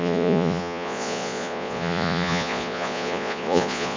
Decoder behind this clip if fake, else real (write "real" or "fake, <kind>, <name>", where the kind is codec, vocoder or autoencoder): fake, vocoder, Vocos